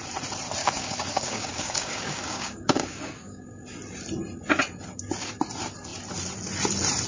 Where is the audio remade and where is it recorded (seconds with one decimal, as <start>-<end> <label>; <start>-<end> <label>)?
0.0-0.6 recorded; 0.6-3.4 remade; 3.4-7.1 recorded